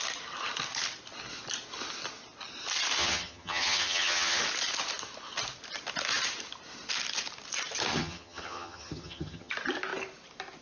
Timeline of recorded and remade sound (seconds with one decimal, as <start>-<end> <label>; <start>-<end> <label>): 0.0-3.0 recorded; 3.0-4.4 remade; 4.4-7.9 recorded; 7.9-9.5 remade; 9.5-10.6 recorded